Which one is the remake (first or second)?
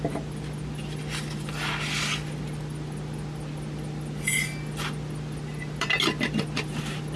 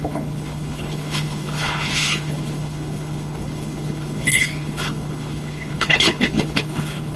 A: second